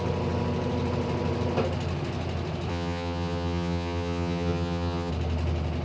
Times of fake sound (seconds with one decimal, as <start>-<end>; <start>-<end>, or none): 2.7-5.1